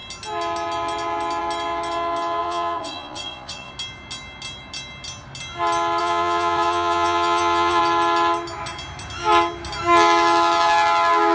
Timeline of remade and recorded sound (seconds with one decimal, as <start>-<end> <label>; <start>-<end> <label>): 0.0-2.4 recorded; 2.4-3.7 remade; 3.7-6.0 recorded; 6.0-7.8 remade; 7.8-11.3 recorded